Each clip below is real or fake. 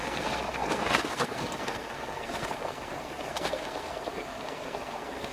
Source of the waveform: fake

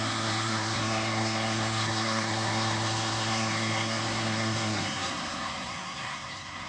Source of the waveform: fake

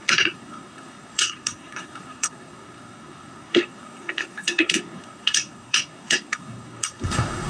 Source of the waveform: fake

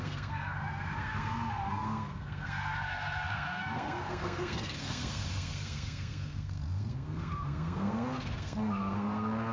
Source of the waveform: fake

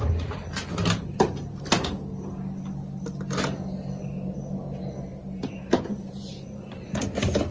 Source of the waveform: real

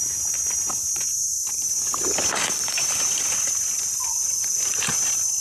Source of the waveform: real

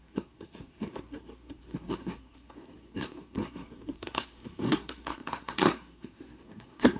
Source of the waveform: fake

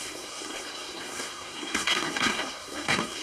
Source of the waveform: fake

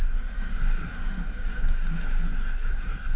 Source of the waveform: fake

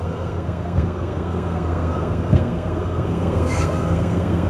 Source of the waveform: fake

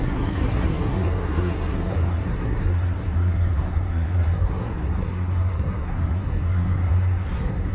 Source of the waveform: fake